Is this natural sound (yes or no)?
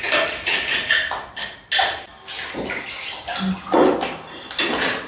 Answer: yes